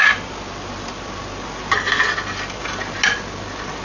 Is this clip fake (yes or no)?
no